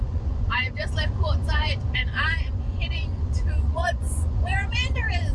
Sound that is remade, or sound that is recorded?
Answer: remade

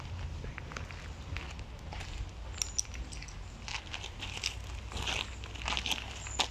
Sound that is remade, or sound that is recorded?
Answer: recorded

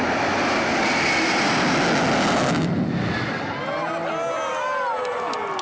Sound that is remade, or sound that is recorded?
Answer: recorded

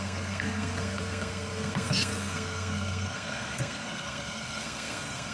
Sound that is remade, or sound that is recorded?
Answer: remade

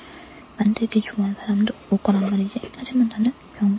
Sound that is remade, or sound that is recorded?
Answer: recorded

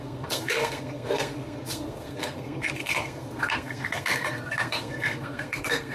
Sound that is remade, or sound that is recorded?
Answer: remade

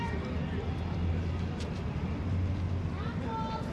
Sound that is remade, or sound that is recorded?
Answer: recorded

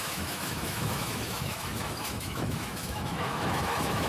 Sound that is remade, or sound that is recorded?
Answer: remade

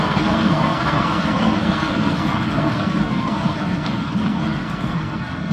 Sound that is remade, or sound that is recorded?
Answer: remade